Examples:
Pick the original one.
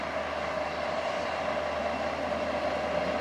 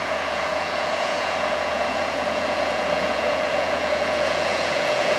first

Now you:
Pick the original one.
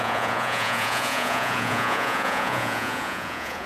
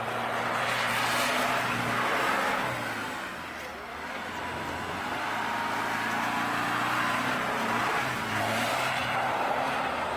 second